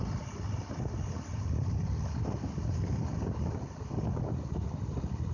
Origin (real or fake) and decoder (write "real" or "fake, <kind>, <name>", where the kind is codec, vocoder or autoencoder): real